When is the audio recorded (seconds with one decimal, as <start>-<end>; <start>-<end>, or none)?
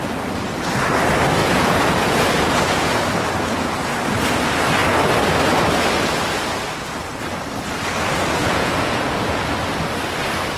0.0-1.4; 2.9-8.4; 9.5-10.6